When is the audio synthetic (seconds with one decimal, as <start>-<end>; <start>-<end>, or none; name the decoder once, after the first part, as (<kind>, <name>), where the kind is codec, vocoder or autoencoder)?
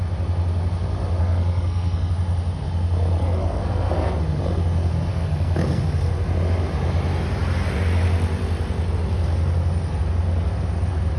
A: 1.2-2.1 (codec, SNAC); 3.2-4.2; 5.1-5.8